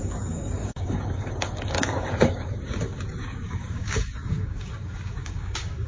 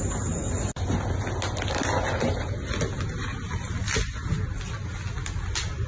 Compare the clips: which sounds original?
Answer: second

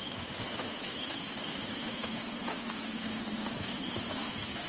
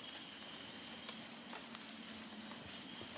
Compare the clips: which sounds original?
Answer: second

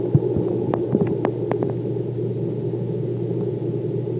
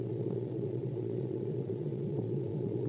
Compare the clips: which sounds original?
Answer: first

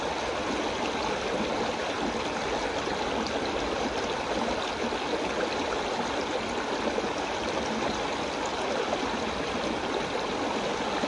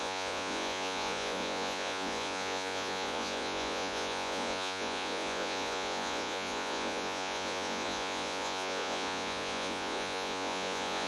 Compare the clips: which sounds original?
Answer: first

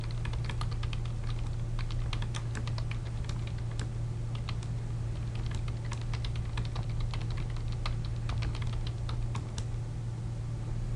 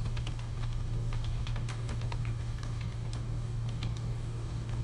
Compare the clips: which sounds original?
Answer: first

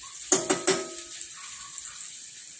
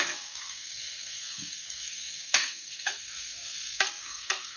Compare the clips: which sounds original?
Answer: first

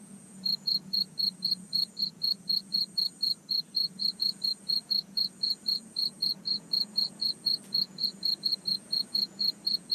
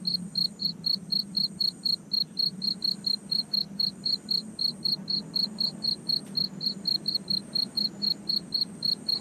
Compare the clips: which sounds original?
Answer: second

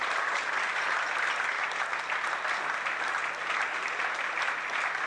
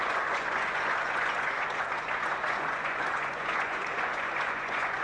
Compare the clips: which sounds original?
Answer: first